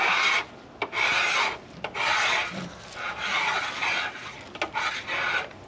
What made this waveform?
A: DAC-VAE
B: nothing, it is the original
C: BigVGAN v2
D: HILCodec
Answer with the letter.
B